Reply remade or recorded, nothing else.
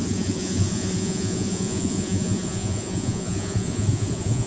remade